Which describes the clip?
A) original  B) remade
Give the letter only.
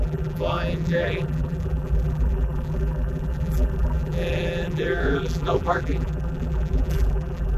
B